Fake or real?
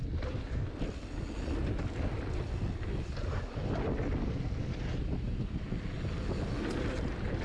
real